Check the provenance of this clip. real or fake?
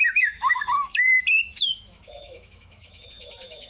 fake